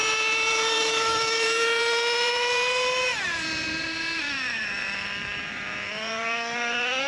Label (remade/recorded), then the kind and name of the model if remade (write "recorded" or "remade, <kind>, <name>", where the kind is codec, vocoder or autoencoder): remade, vocoder, BigVGAN v2